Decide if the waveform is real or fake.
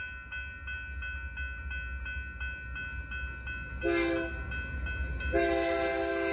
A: real